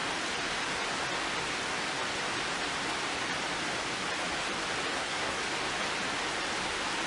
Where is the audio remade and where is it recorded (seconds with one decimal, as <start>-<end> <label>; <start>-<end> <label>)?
0.0-4.9 recorded; 4.9-5.4 remade; 5.4-7.1 recorded